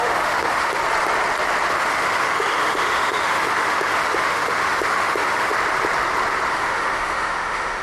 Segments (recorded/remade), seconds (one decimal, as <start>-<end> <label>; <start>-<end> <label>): 0.0-0.8 remade; 0.8-1.7 recorded; 1.7-5.5 remade; 5.5-6.5 recorded; 6.5-7.8 remade